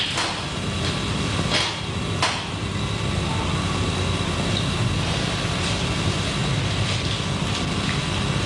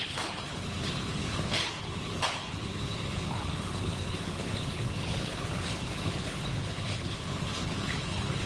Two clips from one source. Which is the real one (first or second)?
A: first